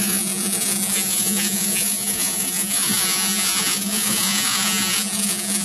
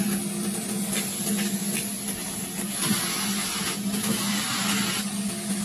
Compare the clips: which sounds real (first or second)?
second